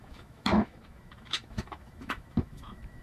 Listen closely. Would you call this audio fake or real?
fake